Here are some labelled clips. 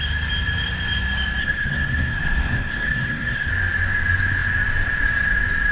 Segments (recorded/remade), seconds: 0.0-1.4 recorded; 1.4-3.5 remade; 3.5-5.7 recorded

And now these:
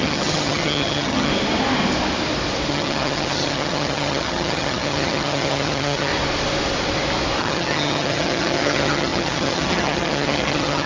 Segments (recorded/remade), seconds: 0.0-1.3 remade; 1.3-2.7 recorded; 2.7-6.1 remade; 6.1-7.4 recorded; 7.4-10.9 remade

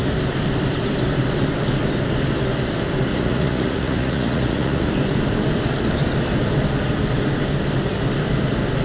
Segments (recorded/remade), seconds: 0.0-3.1 recorded; 3.1-4.9 remade; 4.9-8.8 recorded

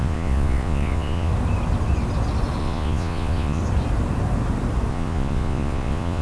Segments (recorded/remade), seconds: 0.0-1.3 remade; 1.3-2.6 recorded; 2.6-3.6 remade; 3.6-4.9 recorded; 4.9-6.2 remade

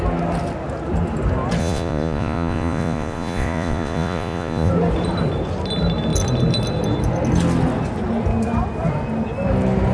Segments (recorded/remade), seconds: 0.0-1.6 recorded; 1.6-4.7 remade; 4.7-9.9 recorded

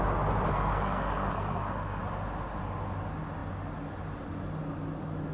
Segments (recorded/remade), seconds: 0.0-0.5 recorded; 0.5-2.0 remade; 2.0-5.3 recorded

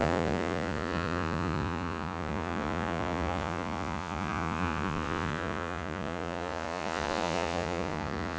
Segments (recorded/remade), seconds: 0.0-8.4 remade

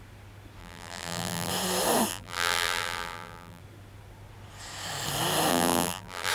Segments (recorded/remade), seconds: 0.0-0.6 recorded; 0.6-1.5 remade; 1.5-2.1 recorded; 2.1-3.6 remade; 3.6-5.5 recorded; 5.5-6.3 remade